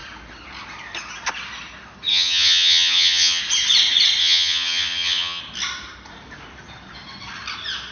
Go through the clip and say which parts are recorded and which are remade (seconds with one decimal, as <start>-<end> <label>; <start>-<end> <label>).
0.0-2.1 recorded; 2.1-3.4 remade; 3.4-4.2 recorded; 4.2-5.4 remade; 5.4-7.9 recorded

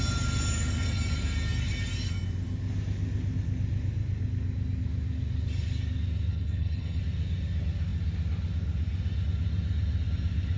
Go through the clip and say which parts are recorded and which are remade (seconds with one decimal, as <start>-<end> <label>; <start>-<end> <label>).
0.0-6.3 recorded; 6.3-7.0 remade; 7.0-10.6 recorded